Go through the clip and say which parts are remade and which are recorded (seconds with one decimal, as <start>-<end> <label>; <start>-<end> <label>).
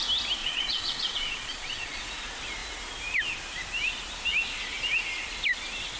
0.0-0.4 recorded; 0.4-2.0 remade; 2.0-6.0 recorded